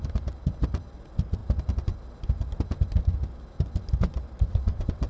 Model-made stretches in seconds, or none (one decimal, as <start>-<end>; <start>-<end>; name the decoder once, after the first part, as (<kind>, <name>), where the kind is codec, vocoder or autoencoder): 4.5-5.1 (vocoder, WaveNeXt)